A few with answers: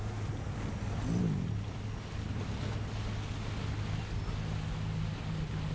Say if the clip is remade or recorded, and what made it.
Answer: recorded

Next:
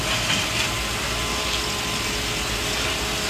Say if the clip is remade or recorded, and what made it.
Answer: recorded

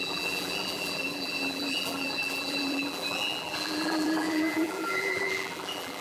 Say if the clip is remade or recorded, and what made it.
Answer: remade, vocoder, BigVGAN v2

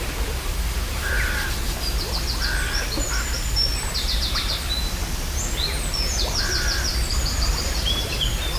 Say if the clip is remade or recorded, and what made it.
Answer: recorded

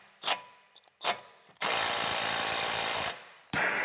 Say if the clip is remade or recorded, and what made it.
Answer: recorded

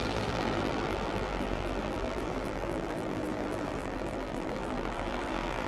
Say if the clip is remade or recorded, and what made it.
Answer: remade, vocoder, BigVGAN v2